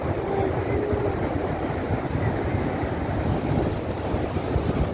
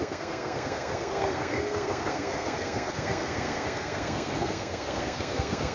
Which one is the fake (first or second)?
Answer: second